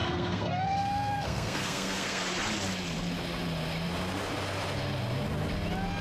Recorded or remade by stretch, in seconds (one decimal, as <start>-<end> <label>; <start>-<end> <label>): 0.0-2.2 remade; 2.2-6.0 recorded